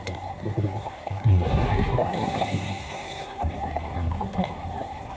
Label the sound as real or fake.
fake